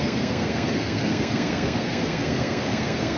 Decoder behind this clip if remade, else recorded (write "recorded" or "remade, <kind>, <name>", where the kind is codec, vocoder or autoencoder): remade, codec, SNAC